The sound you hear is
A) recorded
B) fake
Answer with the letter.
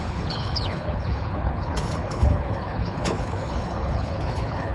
B